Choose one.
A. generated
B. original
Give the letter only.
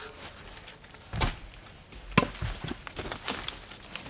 B